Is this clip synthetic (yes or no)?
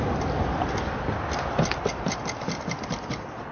no